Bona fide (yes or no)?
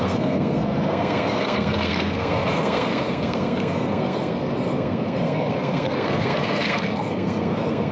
no